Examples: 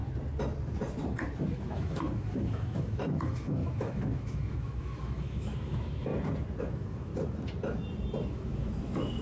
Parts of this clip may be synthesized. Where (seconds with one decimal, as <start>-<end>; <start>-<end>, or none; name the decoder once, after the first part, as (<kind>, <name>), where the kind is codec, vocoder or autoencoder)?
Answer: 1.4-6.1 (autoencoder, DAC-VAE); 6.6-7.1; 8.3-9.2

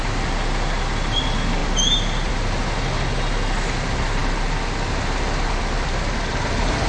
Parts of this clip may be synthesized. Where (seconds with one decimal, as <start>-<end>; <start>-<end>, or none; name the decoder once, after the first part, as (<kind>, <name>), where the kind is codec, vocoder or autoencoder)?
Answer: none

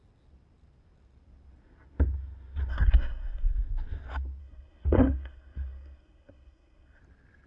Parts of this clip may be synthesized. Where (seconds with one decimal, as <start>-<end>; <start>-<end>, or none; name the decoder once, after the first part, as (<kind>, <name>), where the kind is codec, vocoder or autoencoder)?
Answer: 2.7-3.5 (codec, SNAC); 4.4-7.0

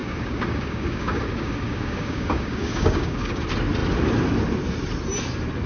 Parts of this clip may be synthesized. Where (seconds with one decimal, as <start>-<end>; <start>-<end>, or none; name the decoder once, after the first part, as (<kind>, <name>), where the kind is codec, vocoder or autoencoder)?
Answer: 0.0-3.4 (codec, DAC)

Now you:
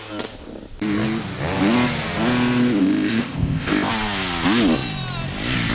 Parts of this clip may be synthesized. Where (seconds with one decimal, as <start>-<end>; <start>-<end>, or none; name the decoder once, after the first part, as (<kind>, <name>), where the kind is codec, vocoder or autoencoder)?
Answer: 2.8-3.9 (codec, ZipCodec)